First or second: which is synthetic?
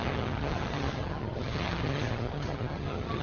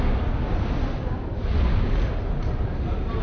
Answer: first